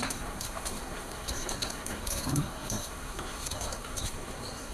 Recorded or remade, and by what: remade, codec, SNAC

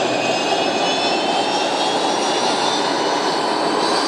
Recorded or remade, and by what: recorded